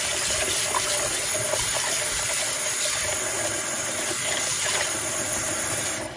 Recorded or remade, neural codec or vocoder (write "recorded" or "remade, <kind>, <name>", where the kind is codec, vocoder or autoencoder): recorded